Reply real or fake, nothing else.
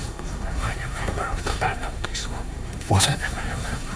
fake